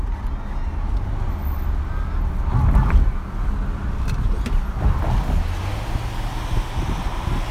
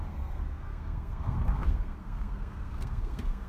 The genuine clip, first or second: first